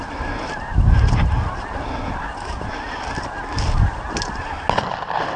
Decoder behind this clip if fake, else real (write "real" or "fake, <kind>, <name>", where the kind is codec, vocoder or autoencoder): real